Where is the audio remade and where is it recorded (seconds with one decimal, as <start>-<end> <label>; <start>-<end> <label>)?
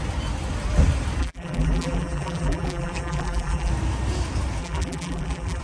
0.0-1.2 recorded; 1.2-3.7 remade; 3.7-4.6 recorded; 4.6-5.6 remade